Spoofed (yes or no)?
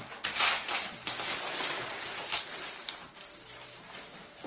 yes